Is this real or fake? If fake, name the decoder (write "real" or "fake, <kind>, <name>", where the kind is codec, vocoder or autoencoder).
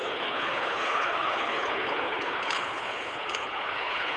fake, codec, HILCodec